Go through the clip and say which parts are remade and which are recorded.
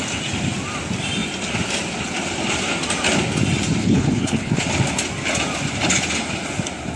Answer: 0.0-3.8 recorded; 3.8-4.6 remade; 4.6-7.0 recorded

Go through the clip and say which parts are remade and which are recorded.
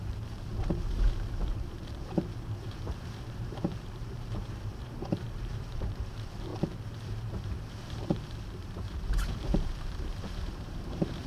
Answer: 0.0-11.3 remade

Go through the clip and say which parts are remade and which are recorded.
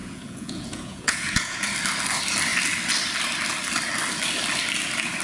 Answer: 0.0-1.7 remade; 1.7-5.2 recorded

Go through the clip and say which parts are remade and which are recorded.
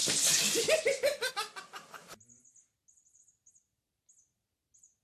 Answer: 0.0-5.0 recorded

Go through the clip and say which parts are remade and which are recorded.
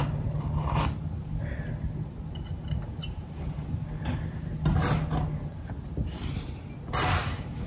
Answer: 0.0-5.5 recorded; 5.5-6.5 remade; 6.5-7.7 recorded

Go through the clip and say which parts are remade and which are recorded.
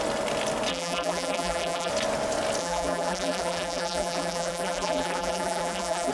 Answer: 0.0-0.7 recorded; 0.7-1.9 remade; 1.9-2.6 recorded; 2.6-6.1 remade